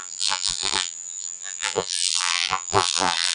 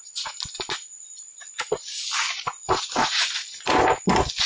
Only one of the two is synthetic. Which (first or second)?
first